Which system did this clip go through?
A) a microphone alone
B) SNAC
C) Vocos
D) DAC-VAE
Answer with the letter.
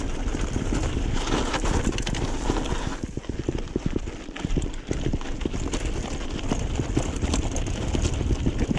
A